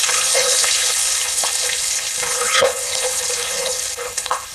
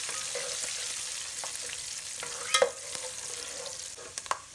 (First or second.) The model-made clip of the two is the first